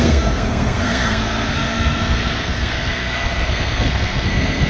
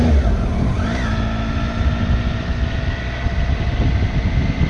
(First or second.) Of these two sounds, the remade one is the first